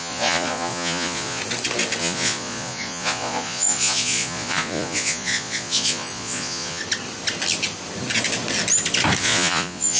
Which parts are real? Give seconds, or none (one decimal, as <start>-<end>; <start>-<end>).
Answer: 1.4-2.0; 6.8-9.2